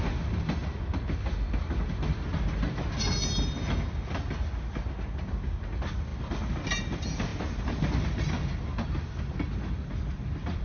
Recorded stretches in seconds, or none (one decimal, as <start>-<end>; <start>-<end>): 0.0-10.6